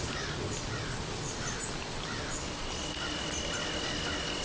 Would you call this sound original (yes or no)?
yes